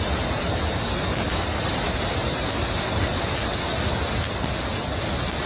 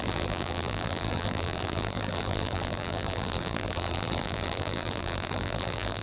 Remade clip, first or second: second